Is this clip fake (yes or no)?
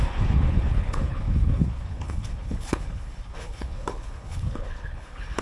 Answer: yes